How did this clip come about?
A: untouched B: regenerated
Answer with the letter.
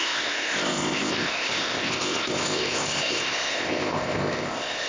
B